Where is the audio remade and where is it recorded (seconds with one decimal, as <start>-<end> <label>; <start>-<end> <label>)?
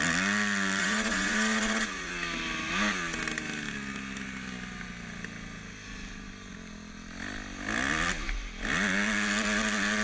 0.0-0.8 recorded; 0.8-2.1 remade; 2.1-10.0 recorded